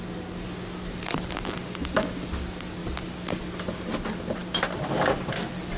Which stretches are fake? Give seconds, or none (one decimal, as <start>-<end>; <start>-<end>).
none